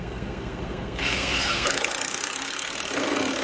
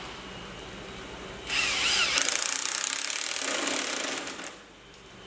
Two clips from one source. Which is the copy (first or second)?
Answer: first